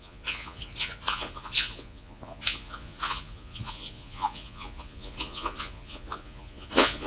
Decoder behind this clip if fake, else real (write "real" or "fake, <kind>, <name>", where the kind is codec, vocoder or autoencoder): fake, vocoder, Vocos